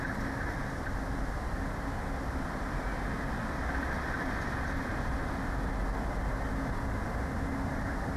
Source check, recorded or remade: recorded